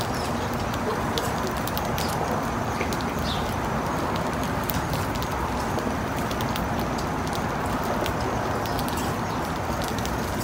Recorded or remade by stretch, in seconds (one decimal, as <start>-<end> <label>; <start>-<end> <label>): 0.0-10.4 recorded